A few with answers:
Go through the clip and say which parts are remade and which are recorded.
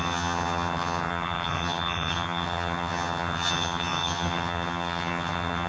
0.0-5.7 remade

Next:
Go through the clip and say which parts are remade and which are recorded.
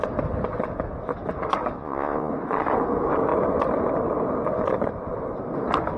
0.0-1.8 recorded; 1.8-2.3 remade; 2.3-6.0 recorded